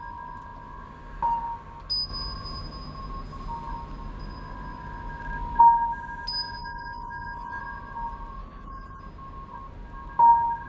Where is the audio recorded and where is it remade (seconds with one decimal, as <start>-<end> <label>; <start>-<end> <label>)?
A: 0.0-6.6 recorded; 6.6-7.6 remade; 7.6-8.4 recorded; 8.4-9.0 remade; 9.0-10.7 recorded